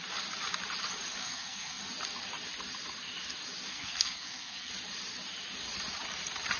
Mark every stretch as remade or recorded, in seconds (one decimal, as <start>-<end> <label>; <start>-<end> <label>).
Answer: 0.0-1.2 recorded; 1.2-1.8 remade; 1.8-3.7 recorded; 3.7-4.7 remade; 4.7-6.6 recorded